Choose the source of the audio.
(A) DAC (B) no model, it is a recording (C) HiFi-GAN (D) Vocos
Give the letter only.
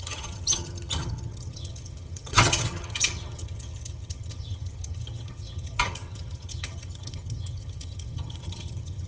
C